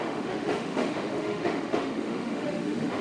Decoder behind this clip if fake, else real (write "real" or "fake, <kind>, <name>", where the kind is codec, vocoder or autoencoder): fake, autoencoder, DAC-VAE